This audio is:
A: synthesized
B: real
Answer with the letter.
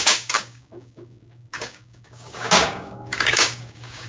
A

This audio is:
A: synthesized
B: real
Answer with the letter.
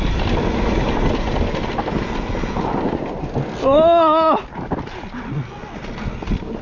B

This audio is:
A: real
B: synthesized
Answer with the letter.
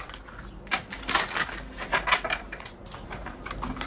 A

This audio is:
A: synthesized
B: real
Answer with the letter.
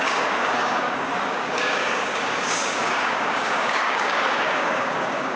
A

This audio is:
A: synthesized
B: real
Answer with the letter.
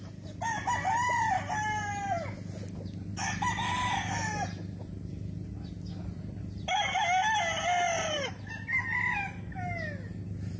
B